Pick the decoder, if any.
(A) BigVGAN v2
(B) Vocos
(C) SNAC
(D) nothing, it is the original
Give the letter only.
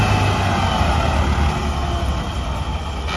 D